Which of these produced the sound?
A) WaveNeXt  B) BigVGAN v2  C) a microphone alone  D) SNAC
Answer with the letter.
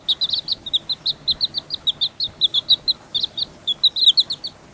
C